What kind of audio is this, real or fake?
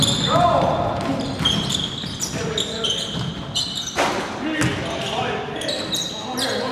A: real